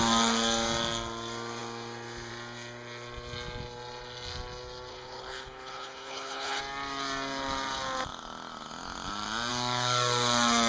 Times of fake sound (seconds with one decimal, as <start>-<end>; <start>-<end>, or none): 4.9-6.6